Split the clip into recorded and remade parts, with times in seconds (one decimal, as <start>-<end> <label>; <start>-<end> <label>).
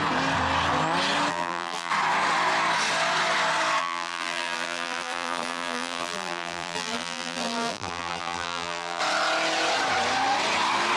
0.0-1.3 recorded; 1.3-1.9 remade; 1.9-3.8 recorded; 3.8-9.0 remade; 9.0-11.0 recorded